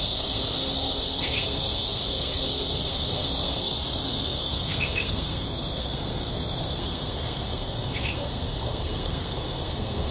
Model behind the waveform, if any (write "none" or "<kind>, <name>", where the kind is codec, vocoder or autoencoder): codec, SNAC